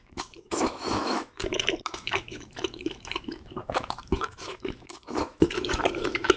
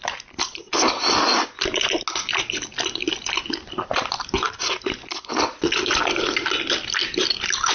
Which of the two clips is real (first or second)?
second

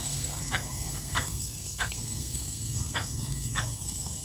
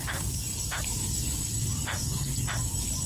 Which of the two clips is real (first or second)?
second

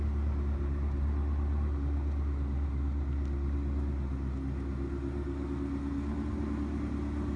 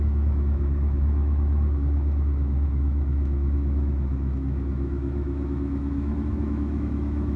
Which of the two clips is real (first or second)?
first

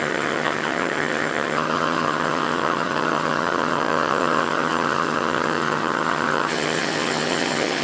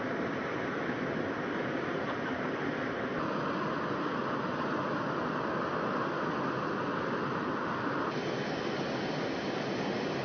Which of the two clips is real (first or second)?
second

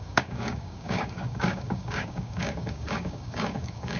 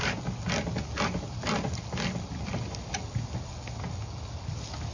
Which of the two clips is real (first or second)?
second